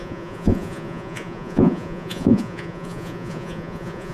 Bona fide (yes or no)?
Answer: no